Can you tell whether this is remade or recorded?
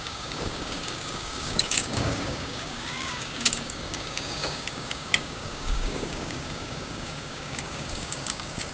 remade